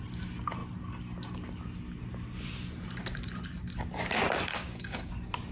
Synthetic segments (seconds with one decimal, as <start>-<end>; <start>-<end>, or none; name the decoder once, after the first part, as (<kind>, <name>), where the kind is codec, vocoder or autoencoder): 4.5-5.1 (codec, DAC)